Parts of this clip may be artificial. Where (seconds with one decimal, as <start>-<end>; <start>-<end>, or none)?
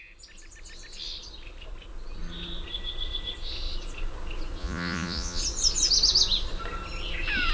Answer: 4.6-5.4